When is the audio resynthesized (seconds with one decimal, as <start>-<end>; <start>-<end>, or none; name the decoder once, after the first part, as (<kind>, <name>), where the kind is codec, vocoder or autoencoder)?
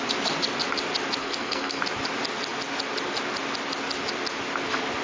1.2-1.8 (codec, SNAC)